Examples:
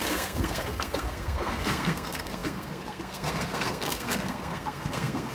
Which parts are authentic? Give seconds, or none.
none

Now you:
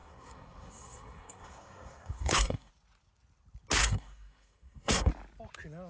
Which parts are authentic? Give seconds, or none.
2.7-3.8; 5.1-5.9